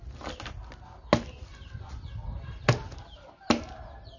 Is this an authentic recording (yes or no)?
yes